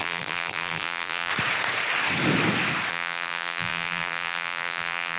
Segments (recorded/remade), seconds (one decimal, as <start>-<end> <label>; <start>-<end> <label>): 0.0-1.3 remade; 1.3-2.9 recorded; 2.9-5.2 remade